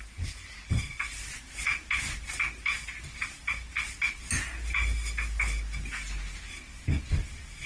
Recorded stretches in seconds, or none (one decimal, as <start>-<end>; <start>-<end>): 0.0-7.7